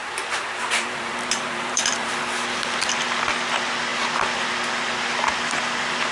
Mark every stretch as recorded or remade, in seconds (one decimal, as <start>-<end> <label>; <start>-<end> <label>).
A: 0.0-2.1 remade; 2.1-6.1 recorded